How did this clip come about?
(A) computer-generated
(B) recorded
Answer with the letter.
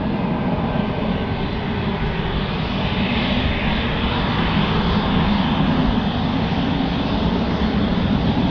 B